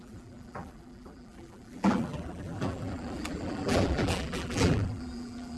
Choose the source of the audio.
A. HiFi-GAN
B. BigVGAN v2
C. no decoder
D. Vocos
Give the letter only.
B